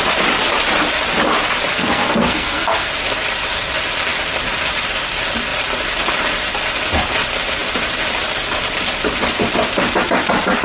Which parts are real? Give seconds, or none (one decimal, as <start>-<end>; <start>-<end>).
0.0-1.7; 2.9-10.6